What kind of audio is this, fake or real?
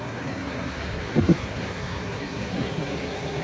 fake